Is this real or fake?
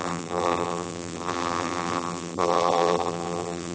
fake